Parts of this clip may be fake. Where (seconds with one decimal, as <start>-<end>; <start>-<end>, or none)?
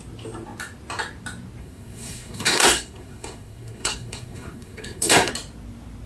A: 1.6-5.3